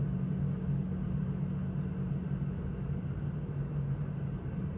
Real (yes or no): yes